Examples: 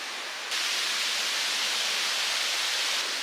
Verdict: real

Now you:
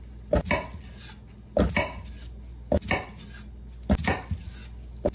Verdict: real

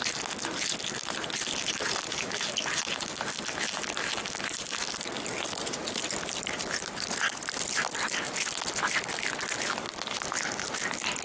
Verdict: real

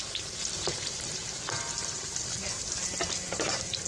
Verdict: fake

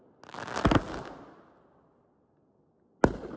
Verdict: real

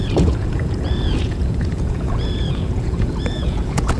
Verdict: fake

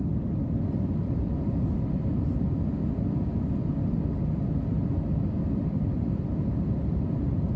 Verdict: real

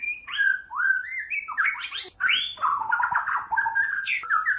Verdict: real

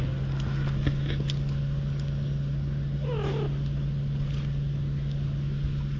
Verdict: real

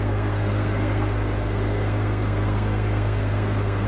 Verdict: fake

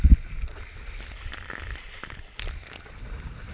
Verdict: real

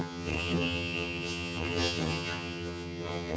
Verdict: fake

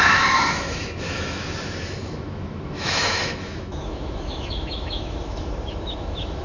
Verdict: fake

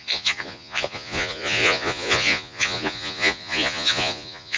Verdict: fake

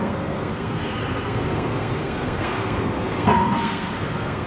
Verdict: fake